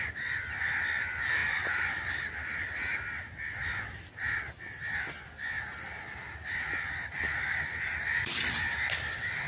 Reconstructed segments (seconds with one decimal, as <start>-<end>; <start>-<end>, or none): none